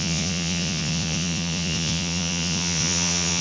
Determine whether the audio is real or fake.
fake